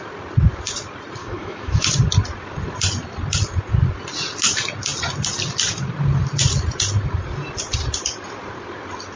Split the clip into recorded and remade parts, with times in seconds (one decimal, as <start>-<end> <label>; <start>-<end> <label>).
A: 0.0-1.2 recorded; 1.2-1.9 remade; 1.9-9.2 recorded

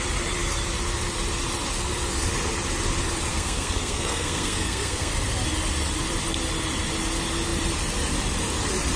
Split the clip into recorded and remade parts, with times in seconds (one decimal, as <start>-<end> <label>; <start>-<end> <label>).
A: 0.0-3.3 recorded; 3.3-5.1 remade; 5.1-9.0 recorded

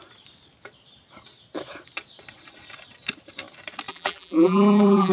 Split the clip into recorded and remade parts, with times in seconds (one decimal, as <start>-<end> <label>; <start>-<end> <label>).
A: 0.0-3.9 recorded; 3.9-5.1 remade

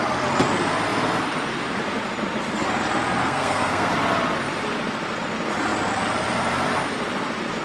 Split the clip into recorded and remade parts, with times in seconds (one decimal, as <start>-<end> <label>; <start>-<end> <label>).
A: 0.0-3.2 recorded; 3.2-3.9 remade; 3.9-7.6 recorded

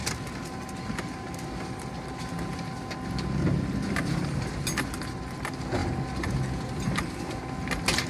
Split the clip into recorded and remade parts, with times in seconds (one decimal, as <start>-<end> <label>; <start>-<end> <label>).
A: 0.0-8.1 recorded